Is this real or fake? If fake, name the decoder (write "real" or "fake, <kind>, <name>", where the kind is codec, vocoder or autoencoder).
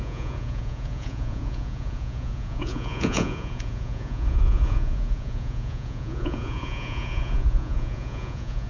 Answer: fake, vocoder, Vocos